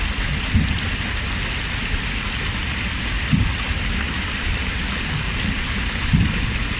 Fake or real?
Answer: real